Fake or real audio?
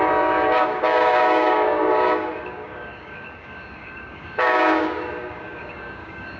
fake